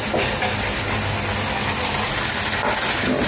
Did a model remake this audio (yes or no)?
no